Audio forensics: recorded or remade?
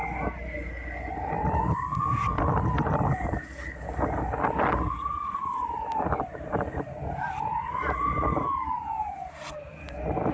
recorded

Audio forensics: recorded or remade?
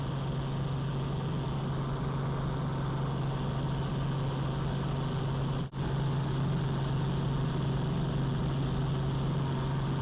recorded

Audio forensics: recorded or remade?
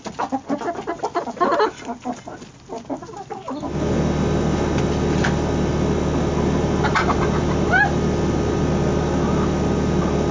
recorded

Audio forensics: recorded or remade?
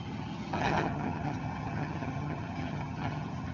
remade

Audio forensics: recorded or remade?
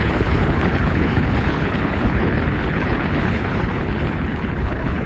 remade